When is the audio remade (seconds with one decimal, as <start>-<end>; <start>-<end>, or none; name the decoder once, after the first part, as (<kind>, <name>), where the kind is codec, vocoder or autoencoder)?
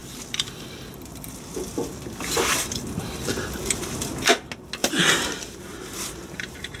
4.8-6.8 (vocoder, BigVGAN v2)